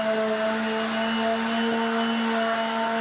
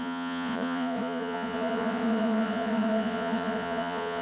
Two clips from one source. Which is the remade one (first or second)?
second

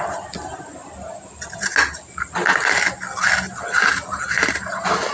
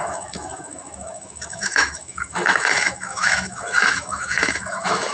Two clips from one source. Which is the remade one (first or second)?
second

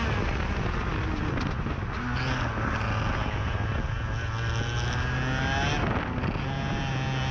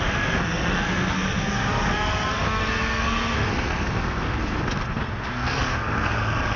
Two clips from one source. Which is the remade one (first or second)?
second